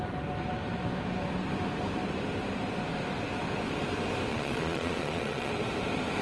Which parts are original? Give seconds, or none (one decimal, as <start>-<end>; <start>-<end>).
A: 0.0-4.3; 5.5-6.2